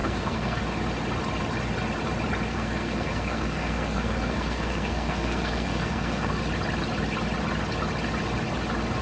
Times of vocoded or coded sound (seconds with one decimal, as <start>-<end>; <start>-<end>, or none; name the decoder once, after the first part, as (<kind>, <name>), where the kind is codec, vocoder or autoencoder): 0.0-0.6 (codec, SNAC); 2.5-6.4